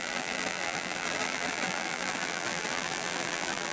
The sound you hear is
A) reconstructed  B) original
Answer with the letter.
A